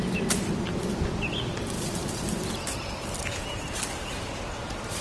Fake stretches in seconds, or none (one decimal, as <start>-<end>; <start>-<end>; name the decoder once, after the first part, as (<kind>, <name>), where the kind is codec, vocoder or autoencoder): 2.0-3.8 (vocoder, BigVGAN v2)